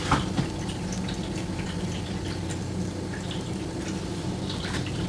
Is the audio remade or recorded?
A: recorded